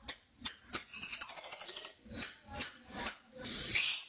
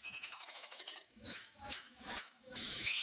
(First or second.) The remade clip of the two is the second